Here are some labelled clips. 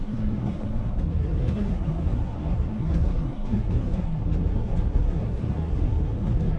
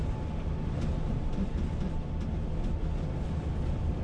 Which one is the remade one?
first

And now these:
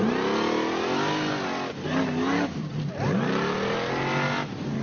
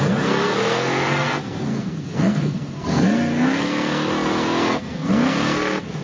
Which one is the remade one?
second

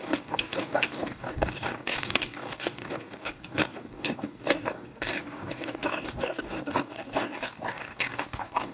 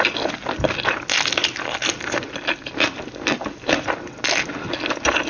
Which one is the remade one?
first